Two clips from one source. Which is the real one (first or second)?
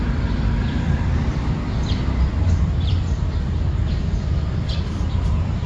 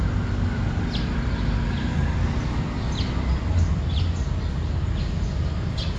second